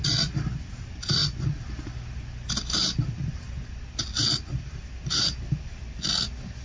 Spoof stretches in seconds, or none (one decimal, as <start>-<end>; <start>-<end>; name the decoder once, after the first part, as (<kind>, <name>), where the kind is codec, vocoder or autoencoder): none